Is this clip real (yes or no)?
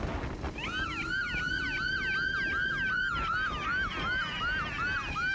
yes